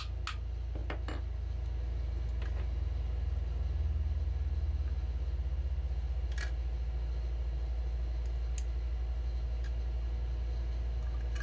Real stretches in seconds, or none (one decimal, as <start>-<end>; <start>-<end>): 0.0-11.4